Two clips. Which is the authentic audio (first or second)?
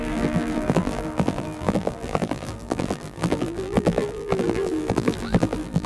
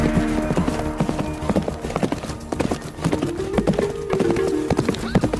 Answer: second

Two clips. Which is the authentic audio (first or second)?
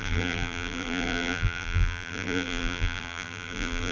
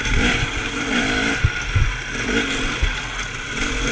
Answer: second